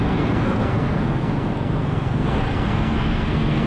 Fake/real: fake